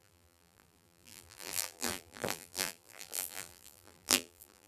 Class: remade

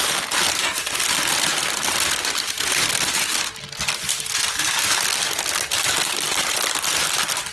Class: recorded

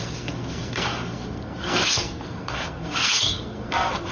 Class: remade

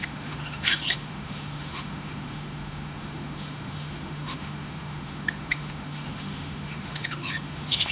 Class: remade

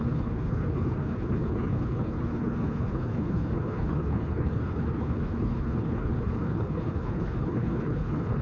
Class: remade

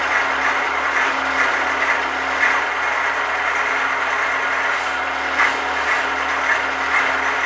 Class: recorded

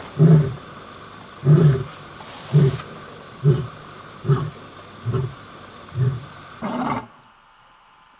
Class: remade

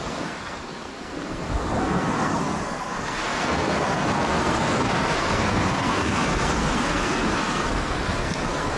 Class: remade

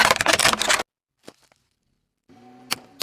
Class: recorded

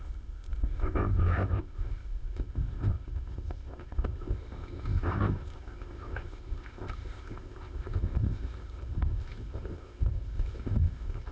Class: remade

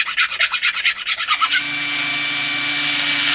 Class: recorded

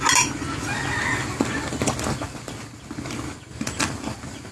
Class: recorded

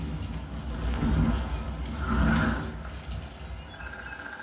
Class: recorded